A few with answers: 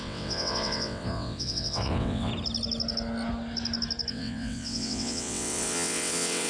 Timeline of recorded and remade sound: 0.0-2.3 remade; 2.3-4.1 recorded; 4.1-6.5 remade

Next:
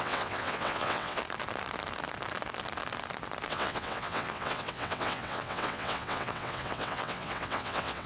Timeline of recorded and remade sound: 0.0-1.2 remade; 1.2-3.5 recorded; 3.5-8.1 remade